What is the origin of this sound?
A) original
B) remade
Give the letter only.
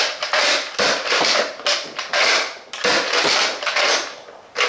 A